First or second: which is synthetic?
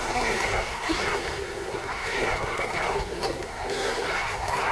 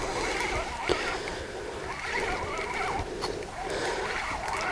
first